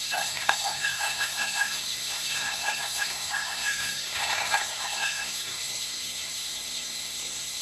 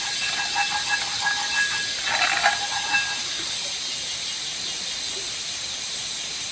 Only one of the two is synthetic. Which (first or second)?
first